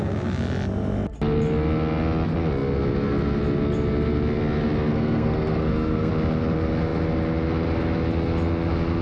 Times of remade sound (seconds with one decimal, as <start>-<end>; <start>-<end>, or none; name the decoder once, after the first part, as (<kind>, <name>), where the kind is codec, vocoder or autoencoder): 4.9-6.1 (codec, SNAC)